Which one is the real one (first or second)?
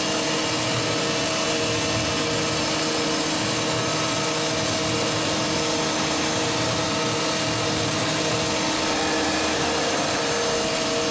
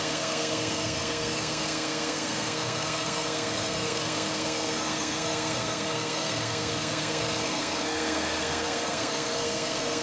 first